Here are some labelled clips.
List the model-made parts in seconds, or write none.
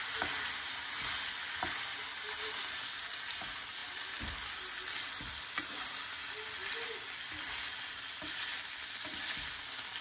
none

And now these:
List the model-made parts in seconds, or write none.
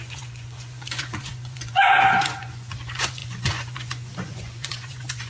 0.0-5.3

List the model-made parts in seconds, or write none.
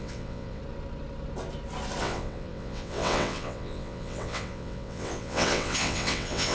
0.0-0.6; 2.0-6.5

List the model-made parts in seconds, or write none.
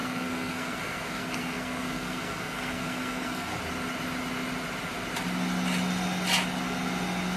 0.0-3.5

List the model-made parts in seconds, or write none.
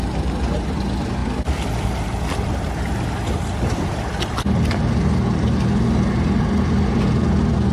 1.2-5.8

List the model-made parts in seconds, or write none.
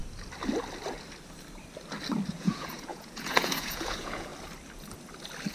2.3-4.3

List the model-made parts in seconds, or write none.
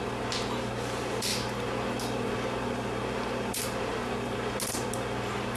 none